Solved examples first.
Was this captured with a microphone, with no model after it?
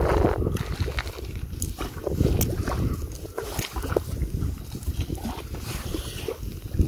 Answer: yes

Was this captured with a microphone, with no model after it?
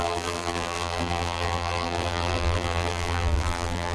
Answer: no